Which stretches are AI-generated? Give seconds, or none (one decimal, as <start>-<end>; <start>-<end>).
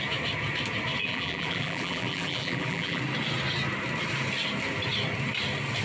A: 1.0-3.0